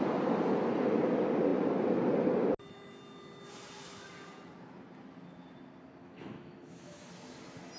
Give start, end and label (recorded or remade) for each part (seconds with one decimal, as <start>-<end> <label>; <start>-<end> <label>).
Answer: 0.0-6.0 recorded; 6.0-7.1 remade; 7.1-7.8 recorded